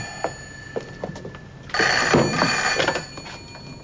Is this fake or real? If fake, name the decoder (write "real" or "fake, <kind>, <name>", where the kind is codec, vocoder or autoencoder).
real